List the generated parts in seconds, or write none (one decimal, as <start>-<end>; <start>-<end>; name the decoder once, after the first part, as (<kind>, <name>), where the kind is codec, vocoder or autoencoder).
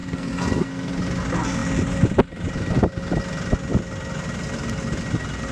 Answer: 0.0-0.9 (codec, SNAC)